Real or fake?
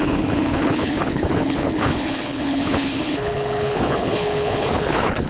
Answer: fake